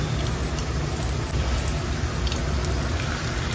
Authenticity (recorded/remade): recorded